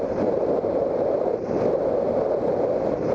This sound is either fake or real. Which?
real